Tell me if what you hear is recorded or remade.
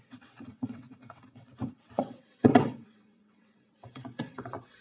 remade